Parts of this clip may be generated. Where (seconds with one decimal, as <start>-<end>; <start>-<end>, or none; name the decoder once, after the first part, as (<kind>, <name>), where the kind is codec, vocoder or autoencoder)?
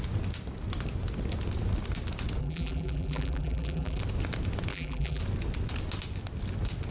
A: 2.4-4.0 (vocoder, BigVGAN v2); 4.7-5.2